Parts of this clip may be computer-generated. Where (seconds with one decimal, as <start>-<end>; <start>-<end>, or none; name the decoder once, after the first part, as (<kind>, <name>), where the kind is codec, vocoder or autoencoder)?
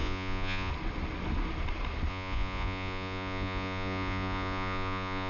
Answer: 0.0-0.7 (vocoder, Vocos); 2.1-5.3